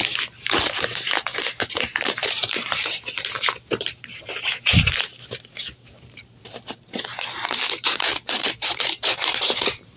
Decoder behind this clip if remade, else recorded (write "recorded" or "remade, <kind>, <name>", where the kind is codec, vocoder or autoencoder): remade, vocoder, BigVGAN v2